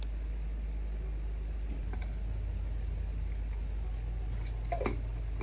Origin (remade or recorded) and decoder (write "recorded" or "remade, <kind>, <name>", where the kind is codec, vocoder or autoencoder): recorded